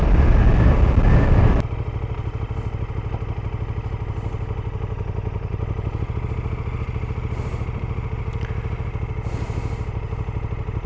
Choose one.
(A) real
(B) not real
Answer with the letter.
A